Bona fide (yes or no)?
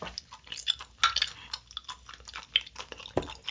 yes